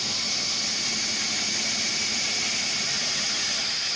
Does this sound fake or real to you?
real